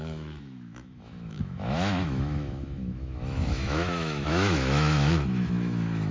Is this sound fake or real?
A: fake